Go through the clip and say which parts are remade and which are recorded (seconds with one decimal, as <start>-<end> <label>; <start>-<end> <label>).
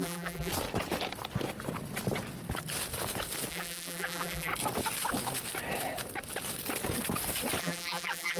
0.0-0.5 remade; 0.5-3.5 recorded; 3.5-4.5 remade; 4.5-7.6 recorded; 7.6-8.4 remade